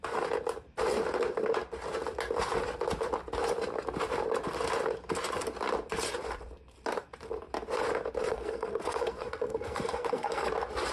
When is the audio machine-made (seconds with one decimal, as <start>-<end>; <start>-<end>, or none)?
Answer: 8.3-10.5

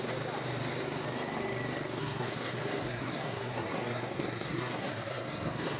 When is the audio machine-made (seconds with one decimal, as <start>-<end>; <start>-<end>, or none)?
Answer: 2.0-5.8